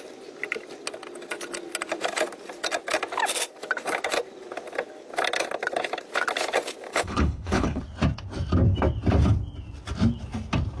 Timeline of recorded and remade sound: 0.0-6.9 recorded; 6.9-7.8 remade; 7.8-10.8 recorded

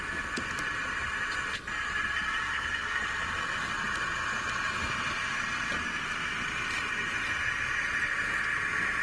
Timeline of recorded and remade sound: 0.0-2.5 recorded; 2.5-3.0 remade; 3.0-9.0 recorded

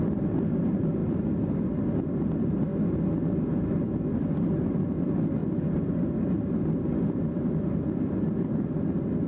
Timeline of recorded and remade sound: 0.0-9.3 recorded

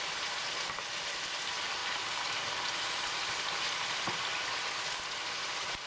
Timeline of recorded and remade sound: 0.0-5.9 recorded

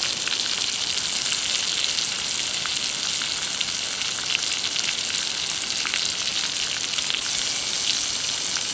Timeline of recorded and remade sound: 0.0-8.7 recorded

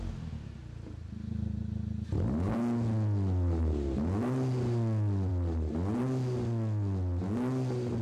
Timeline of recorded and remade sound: 0.0-0.6 recorded; 0.6-1.6 remade; 1.6-8.0 recorded